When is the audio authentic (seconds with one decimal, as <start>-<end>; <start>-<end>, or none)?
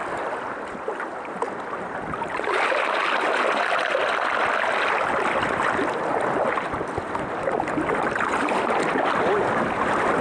0.0-10.2